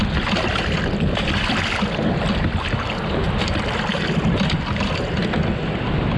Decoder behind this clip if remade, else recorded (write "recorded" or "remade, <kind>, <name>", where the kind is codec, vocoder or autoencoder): recorded